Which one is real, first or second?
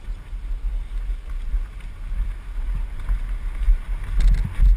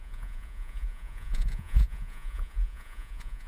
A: first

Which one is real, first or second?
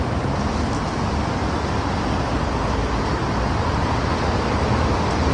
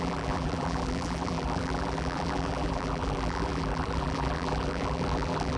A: first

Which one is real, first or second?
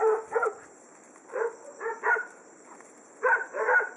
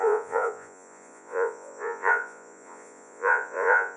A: first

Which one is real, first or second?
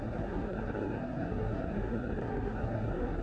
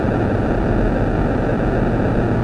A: second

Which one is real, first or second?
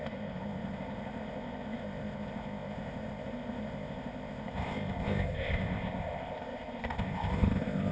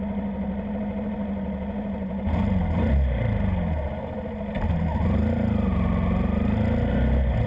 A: second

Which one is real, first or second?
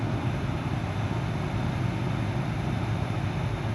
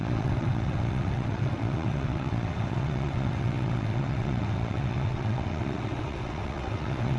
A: first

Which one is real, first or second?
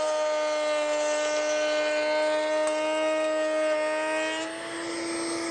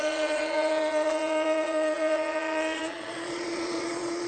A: first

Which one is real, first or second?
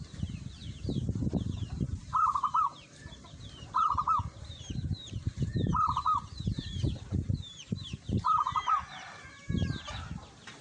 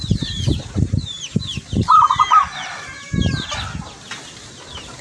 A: second